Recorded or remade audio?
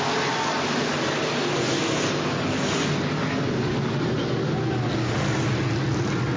recorded